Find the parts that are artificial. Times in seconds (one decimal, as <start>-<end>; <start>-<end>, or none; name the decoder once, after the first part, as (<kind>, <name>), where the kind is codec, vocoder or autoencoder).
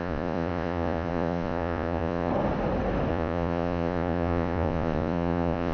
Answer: 0.0-2.3 (vocoder, Vocos); 3.1-5.7